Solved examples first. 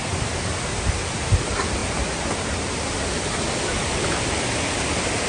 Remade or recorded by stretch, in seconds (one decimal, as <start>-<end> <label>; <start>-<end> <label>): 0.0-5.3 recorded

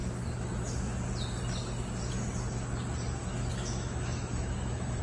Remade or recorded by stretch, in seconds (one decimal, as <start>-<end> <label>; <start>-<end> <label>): 0.0-3.2 recorded; 3.2-5.0 remade

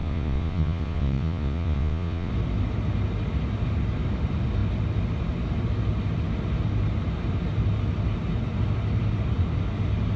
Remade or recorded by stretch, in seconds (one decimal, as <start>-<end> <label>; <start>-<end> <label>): 0.0-2.3 remade; 2.3-10.2 recorded